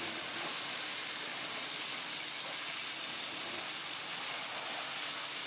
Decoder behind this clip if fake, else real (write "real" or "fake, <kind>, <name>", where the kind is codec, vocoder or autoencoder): real